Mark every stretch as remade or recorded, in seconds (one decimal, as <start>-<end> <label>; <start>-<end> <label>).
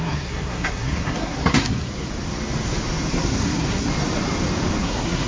0.0-1.9 remade; 1.9-3.1 recorded; 3.1-3.9 remade; 3.9-4.8 recorded; 4.8-5.3 remade